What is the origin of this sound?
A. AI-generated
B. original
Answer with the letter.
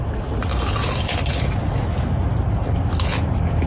B